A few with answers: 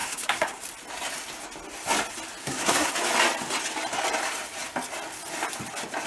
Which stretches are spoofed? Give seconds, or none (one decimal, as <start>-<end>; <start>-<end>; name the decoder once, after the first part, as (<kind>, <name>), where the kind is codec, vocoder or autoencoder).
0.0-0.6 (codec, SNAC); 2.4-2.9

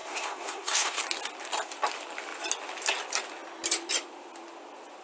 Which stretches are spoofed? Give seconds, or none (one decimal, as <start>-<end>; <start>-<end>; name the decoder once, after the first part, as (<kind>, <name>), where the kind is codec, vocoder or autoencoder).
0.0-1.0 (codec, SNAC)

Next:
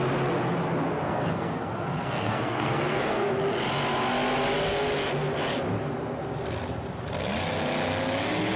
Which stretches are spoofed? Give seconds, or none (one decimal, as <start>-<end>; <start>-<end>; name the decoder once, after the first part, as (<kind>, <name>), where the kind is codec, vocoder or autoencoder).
1.0-3.3 (codec, SNAC)

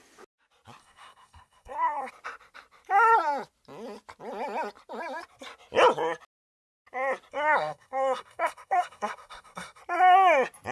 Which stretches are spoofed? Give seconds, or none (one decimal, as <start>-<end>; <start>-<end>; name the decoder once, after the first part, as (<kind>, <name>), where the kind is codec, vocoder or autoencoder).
0.8-2.1 (codec, SNAC); 7.3-9.8

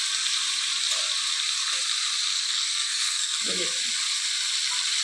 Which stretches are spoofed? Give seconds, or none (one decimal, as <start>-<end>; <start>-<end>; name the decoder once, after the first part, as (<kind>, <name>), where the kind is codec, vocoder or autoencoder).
2.3-3.4 (codec, SNAC)